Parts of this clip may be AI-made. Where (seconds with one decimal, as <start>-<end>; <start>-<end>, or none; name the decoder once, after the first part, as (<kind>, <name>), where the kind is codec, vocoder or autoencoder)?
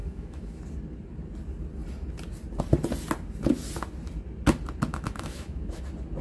0.0-0.6 (autoencoder, DAC-VAE); 4.9-5.8